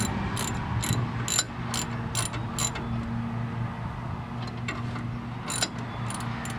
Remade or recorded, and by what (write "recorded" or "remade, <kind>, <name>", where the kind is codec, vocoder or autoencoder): recorded